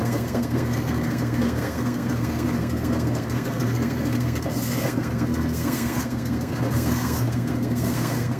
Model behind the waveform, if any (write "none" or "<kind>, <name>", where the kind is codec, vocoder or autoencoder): codec, SNAC